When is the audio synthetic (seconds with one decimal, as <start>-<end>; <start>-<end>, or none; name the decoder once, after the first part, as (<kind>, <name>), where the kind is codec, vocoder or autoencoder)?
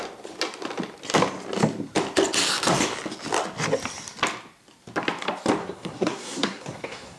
5.6-7.2 (codec, SNAC)